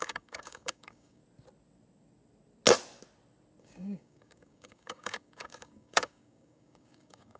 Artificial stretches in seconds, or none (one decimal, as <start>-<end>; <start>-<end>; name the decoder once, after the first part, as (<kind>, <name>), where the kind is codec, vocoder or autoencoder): 0.0-1.2 (codec, DAC); 3.6-7.4